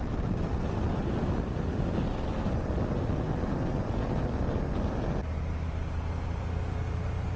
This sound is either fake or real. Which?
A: real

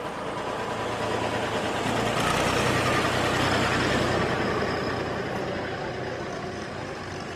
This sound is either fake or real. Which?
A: real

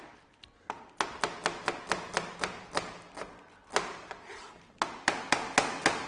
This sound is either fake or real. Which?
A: real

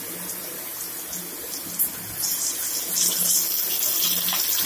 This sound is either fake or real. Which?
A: real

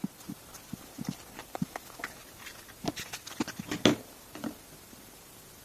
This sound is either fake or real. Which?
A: real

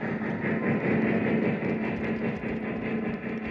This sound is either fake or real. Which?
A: real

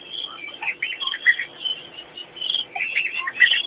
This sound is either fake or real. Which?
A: fake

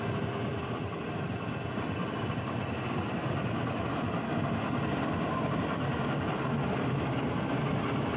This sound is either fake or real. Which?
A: real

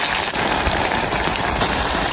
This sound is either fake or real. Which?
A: real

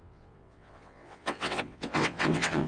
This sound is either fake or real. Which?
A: fake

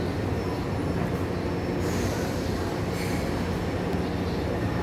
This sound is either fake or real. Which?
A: real